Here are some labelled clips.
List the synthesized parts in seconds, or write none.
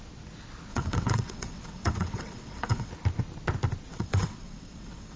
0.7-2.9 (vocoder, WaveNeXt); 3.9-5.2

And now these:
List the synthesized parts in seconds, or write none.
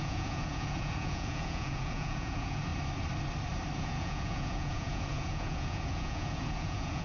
0.0-2.7 (vocoder, Vocos); 3.8-7.0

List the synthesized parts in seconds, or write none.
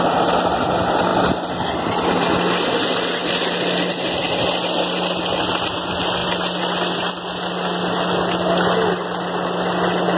none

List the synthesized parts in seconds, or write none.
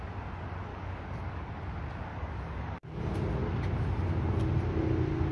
0.7-1.5 (codec, DAC); 2.1-3.0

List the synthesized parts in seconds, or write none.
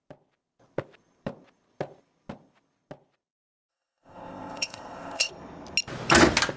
3.7-5.3 (codec, ZipCodec)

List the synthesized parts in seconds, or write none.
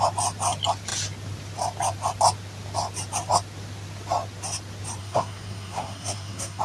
5.0-6.6 (codec, SNAC)